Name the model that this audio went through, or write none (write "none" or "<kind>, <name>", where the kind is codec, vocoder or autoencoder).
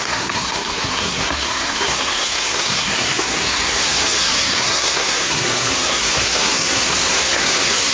codec, SNAC